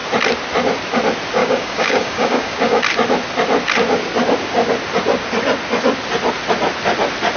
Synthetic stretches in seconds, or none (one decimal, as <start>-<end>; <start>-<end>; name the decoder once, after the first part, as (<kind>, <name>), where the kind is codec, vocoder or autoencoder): 1.4-2.8 (codec, DAC)

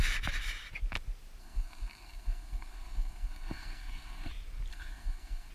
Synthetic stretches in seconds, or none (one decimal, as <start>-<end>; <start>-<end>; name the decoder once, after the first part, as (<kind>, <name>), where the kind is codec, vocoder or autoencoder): 1.4-4.3 (codec, SNAC); 4.7-5.5

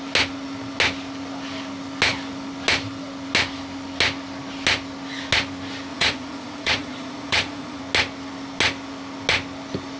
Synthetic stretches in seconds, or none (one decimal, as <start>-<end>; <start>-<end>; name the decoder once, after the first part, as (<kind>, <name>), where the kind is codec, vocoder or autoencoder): 5.9-7.8 (vocoder, Vocos)